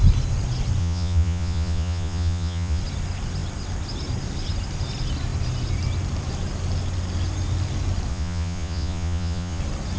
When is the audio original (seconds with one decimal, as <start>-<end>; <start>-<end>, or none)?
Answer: 0.0-0.8; 2.8-8.1; 9.6-10.0